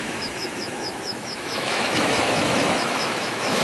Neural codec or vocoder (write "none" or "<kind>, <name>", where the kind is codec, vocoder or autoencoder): autoencoder, DAC-VAE